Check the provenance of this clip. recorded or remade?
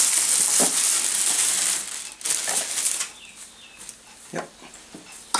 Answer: recorded